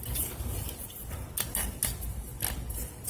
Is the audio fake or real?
real